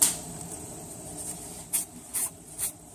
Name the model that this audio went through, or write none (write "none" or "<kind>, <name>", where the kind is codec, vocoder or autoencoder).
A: vocoder, BigVGAN v2